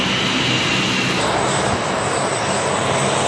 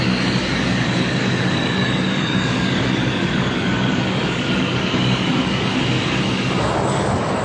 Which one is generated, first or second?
second